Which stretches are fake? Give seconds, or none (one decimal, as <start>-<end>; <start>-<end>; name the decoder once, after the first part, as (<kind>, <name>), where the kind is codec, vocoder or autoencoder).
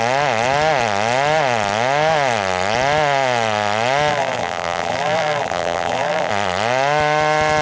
4.1-6.3 (vocoder, BigVGAN v2)